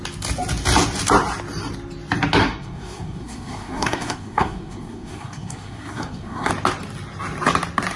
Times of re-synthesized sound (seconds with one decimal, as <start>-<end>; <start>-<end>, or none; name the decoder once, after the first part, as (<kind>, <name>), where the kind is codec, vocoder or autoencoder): 2.4-6.5 (codec, SNAC)